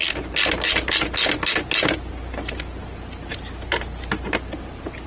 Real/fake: real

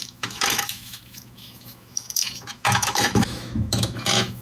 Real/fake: fake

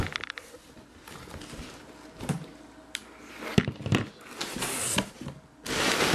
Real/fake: real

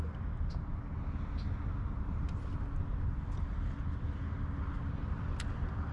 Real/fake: real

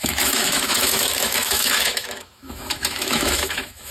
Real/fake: fake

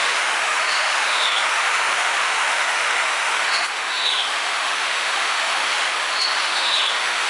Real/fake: fake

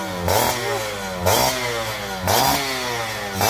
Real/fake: real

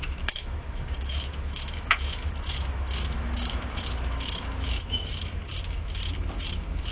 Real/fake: fake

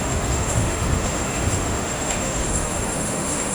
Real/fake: fake